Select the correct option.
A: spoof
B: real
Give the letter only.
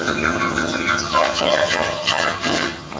A